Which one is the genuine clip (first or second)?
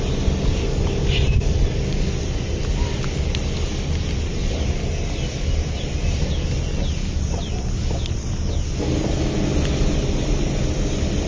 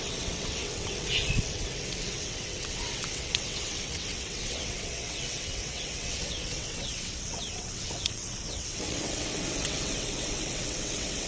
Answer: first